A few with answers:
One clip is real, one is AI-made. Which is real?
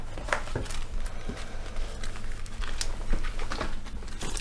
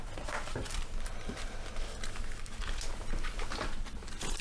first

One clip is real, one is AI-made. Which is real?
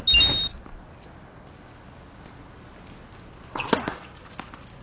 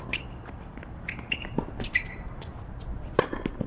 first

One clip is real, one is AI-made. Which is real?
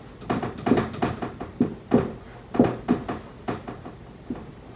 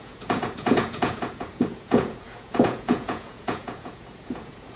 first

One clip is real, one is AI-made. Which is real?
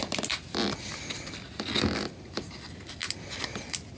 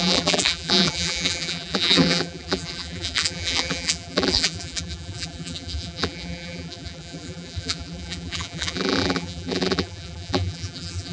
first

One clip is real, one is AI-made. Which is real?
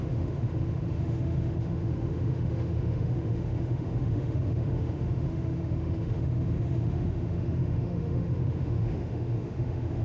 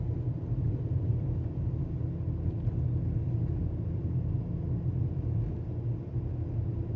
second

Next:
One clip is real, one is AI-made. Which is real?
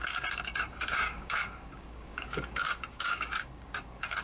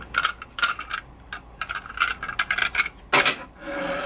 second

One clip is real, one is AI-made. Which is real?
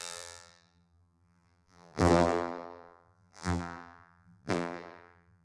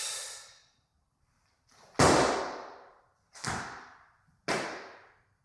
second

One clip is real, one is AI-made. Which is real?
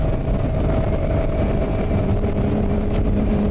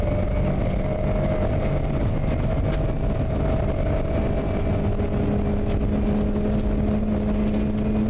second